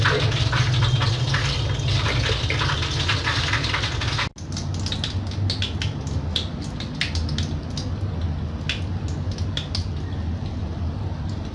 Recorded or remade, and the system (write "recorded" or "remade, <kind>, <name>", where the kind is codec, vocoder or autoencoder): recorded